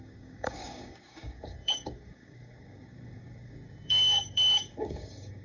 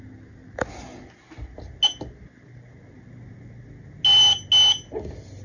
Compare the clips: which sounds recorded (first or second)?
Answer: second